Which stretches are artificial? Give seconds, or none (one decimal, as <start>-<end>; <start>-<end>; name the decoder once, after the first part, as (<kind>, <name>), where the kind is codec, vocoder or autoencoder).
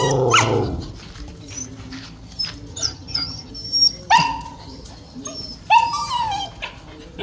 2.7-3.5 (vocoder, HiFi-GAN)